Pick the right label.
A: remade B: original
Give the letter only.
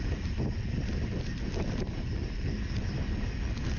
B